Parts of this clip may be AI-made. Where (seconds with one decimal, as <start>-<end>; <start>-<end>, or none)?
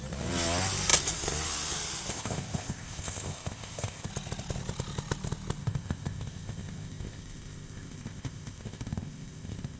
2.1-4.1; 5.6-9.8